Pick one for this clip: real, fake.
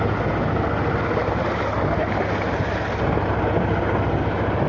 real